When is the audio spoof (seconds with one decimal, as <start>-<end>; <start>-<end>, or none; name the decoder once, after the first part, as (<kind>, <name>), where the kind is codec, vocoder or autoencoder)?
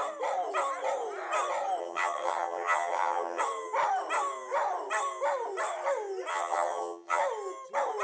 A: 1.8-3.4 (vocoder, HiFi-GAN); 6.3-7.2